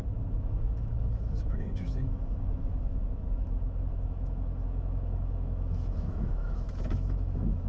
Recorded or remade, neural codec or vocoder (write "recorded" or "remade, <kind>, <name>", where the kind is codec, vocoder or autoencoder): remade, autoencoder, DAC-VAE